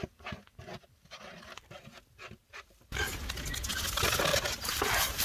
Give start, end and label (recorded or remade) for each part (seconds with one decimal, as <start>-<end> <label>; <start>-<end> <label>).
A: 0.0-2.4 recorded; 2.4-3.2 remade; 3.2-4.3 recorded; 4.3-5.2 remade